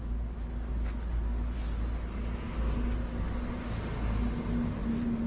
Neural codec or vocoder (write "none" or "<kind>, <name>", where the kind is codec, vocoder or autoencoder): none